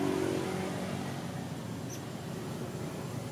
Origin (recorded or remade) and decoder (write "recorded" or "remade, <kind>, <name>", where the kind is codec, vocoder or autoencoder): recorded